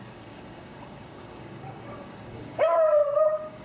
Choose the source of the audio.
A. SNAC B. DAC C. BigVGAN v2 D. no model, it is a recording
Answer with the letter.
B